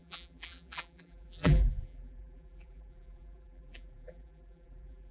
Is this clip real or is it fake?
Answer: fake